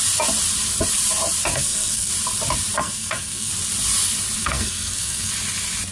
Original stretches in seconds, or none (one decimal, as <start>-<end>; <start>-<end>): 0.0-1.5; 2.1-2.8; 3.5-4.4; 5.3-5.9